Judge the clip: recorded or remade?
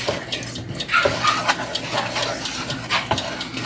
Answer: recorded